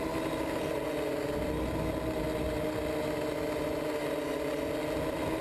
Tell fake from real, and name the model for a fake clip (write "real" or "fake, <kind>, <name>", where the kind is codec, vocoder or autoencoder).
real